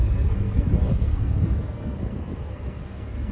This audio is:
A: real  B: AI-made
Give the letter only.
B